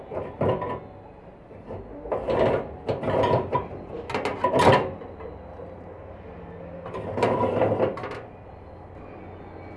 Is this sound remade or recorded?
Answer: recorded